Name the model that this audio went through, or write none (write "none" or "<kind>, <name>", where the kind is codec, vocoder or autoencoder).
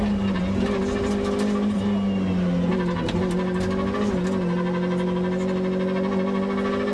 none